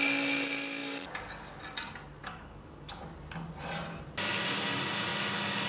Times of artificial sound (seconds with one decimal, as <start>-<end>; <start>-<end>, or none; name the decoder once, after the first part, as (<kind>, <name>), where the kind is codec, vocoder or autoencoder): 2.2-3.0 (autoencoder, DAC-VAE)